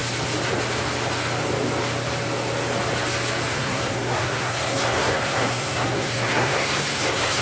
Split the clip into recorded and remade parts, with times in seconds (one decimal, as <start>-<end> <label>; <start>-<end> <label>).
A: 0.0-3.5 recorded; 3.5-7.4 remade